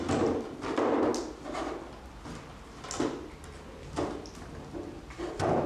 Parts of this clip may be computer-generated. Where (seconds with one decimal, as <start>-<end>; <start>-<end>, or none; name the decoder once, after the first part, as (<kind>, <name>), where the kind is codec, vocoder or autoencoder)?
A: none